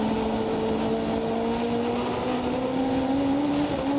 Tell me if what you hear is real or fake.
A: real